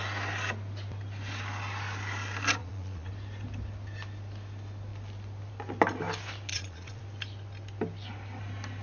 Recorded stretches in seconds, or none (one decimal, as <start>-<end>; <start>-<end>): 0.0-2.6; 3.1-6.5; 7.0-8.8